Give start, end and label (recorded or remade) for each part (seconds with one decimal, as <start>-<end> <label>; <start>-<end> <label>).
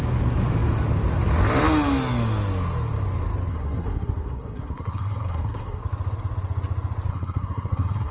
0.0-3.5 recorded; 3.5-5.8 remade; 5.8-7.1 recorded; 7.1-8.1 remade